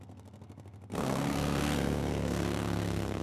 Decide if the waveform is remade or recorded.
remade